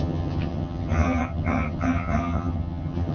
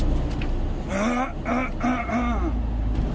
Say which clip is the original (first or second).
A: second